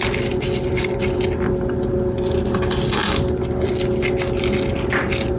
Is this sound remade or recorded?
recorded